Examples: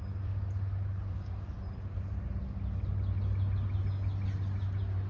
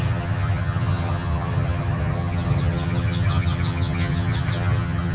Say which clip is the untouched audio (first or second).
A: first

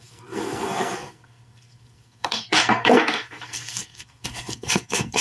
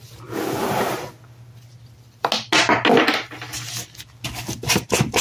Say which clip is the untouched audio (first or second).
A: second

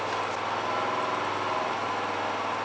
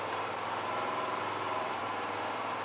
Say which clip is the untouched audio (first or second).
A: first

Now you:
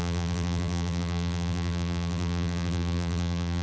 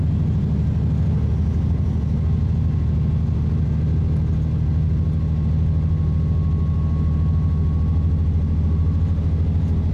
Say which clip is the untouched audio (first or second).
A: second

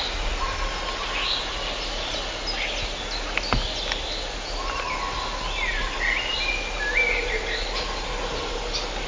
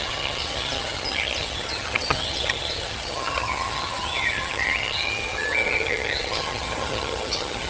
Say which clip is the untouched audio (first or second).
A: first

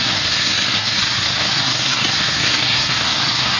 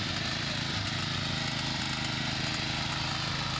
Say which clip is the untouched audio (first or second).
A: second